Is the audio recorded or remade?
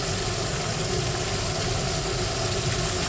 recorded